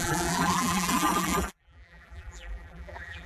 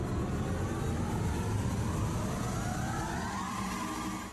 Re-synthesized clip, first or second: first